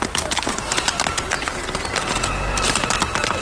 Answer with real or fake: real